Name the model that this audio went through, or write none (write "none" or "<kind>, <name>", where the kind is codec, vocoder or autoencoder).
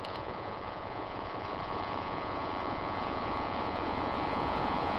vocoder, Vocos